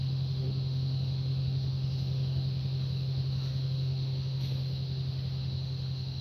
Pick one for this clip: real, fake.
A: fake